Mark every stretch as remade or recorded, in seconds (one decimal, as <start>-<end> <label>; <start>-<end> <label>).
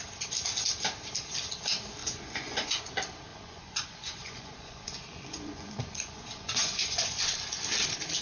0.0-2.0 recorded; 2.0-2.8 remade; 2.8-3.3 recorded; 3.3-7.2 remade; 7.2-8.2 recorded